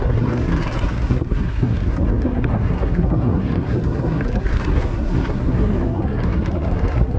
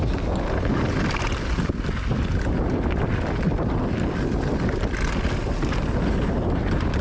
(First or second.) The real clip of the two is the second